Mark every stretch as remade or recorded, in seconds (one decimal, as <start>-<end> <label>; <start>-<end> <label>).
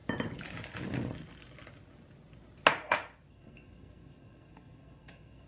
0.0-3.3 recorded; 3.3-5.5 remade